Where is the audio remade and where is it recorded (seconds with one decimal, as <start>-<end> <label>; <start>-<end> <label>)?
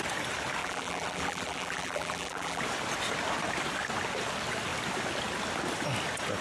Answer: 0.0-0.6 recorded; 0.6-2.6 remade; 2.6-6.4 recorded